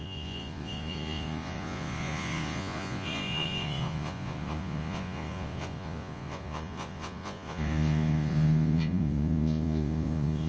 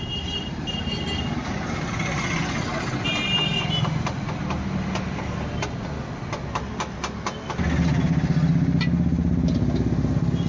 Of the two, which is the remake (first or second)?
first